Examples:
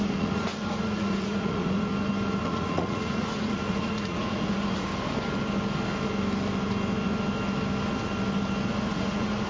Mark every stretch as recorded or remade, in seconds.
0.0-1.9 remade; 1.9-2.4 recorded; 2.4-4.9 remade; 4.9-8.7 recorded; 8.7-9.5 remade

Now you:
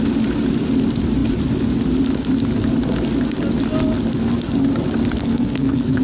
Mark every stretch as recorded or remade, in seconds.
0.0-5.2 recorded; 5.2-6.0 remade

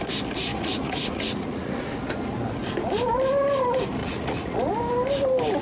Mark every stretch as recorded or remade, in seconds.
0.0-0.5 recorded; 0.5-2.0 remade; 2.0-4.0 recorded; 4.0-4.7 remade; 4.7-5.6 recorded

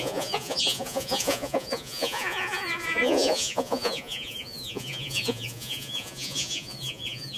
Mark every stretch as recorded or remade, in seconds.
0.0-7.4 remade

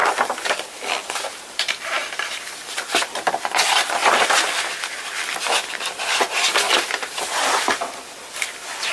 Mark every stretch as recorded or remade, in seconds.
0.0-1.3 recorded; 1.3-4.0 remade; 4.0-8.9 recorded